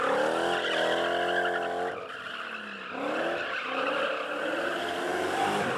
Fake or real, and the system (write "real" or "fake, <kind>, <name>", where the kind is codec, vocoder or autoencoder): real